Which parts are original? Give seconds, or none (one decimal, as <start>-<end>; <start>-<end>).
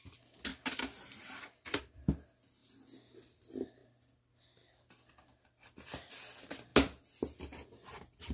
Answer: 0.0-0.5; 1.8-3.8; 6.1-8.3